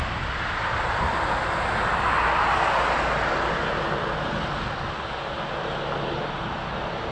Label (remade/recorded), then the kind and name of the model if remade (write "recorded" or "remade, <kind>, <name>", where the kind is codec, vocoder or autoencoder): recorded